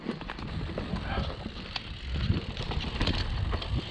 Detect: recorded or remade recorded